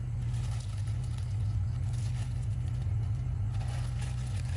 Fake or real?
fake